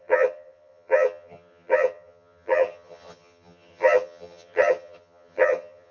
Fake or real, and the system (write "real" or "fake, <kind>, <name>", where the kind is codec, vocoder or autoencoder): fake, vocoder, HiFi-GAN